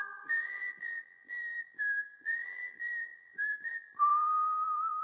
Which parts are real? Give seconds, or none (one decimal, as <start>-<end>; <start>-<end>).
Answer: none

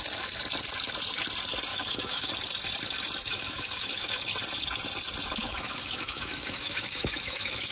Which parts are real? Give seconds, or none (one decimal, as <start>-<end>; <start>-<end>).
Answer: 0.0-1.7; 2.3-3.3; 4.2-5.4

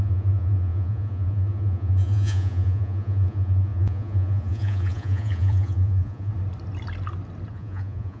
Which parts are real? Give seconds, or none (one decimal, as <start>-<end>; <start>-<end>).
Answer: 6.3-7.5

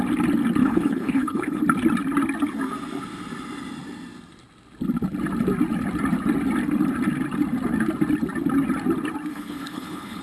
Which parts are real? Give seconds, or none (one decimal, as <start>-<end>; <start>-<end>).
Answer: 0.0-0.6; 1.6-9.3

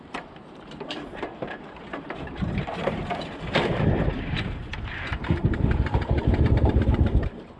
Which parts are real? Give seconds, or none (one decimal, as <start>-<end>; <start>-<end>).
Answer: 3.0-5.4

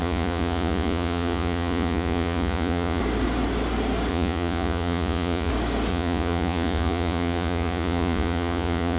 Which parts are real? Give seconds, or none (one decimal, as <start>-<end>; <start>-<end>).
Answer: 3.0-4.1; 5.5-5.9